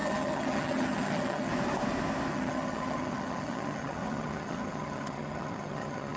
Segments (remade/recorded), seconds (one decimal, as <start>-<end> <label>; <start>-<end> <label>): 0.0-1.5 remade; 1.5-2.3 recorded; 2.3-6.2 remade